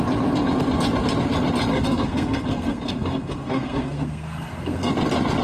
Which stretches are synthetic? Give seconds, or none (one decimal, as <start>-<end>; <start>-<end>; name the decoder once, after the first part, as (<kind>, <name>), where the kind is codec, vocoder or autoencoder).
1.7-4.9 (codec, SNAC)